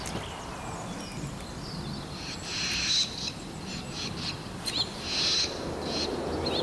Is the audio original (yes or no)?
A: yes